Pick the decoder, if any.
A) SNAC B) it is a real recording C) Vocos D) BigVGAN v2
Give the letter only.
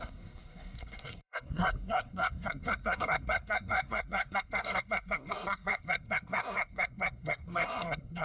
A